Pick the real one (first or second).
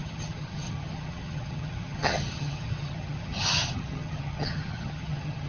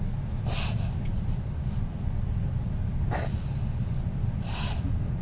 second